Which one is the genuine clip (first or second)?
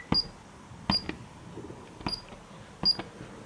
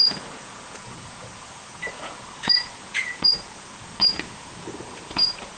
first